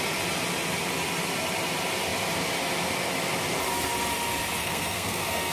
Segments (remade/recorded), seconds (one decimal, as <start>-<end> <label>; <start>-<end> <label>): 0.0-4.6 recorded; 4.6-5.5 remade